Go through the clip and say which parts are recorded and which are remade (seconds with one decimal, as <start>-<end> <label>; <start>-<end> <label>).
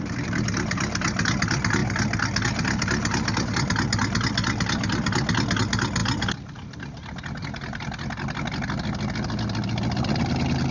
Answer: 0.0-10.7 recorded